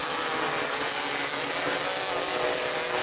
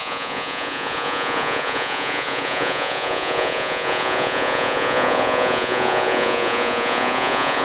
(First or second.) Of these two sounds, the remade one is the second